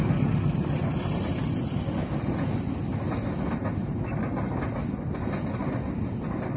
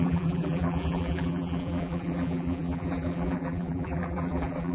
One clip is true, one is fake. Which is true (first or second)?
first